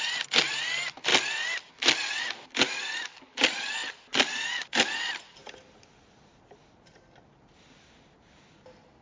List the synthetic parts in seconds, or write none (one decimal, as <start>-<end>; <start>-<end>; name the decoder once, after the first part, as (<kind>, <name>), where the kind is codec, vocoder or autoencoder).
none